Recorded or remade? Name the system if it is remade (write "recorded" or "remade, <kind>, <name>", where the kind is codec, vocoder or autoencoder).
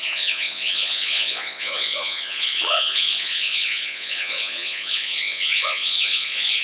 remade, vocoder, Vocos